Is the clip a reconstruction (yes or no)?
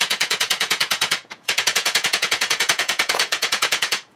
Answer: yes